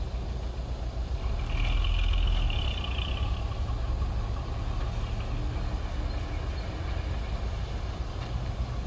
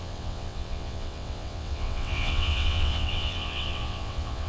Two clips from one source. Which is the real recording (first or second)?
first